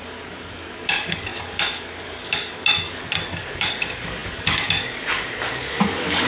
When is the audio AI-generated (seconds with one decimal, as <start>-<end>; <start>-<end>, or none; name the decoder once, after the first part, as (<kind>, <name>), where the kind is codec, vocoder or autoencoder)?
0.0-6.3 (codec, DAC)